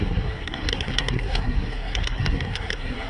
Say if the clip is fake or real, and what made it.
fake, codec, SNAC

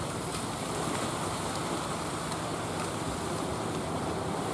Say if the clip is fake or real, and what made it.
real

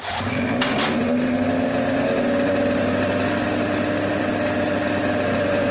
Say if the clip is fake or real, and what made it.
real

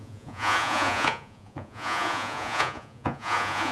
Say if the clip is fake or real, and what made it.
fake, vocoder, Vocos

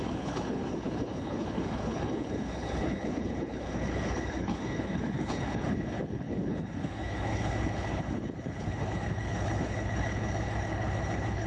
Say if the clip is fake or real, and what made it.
fake, codec, HILCodec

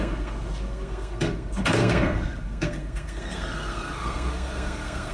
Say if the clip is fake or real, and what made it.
fake, codec, SNAC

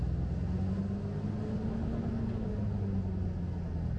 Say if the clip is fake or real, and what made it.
real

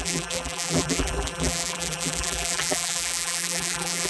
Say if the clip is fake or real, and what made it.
fake, vocoder, BigVGAN v2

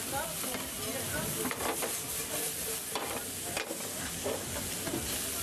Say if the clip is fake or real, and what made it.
real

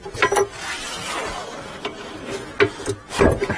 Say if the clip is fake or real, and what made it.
real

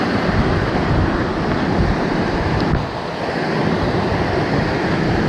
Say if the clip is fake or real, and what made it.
real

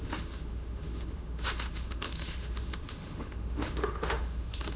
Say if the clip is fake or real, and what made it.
fake, autoencoder, DAC-VAE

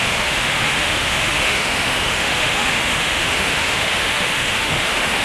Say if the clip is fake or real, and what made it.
fake, autoencoder, DAC-VAE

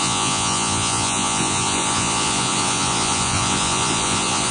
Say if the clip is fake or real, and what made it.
fake, vocoder, Vocos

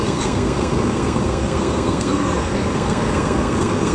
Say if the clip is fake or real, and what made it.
fake, codec, SNAC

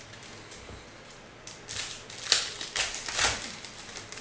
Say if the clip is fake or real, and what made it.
real